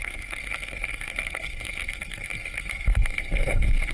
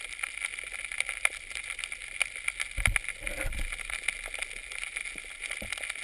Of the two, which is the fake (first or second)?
first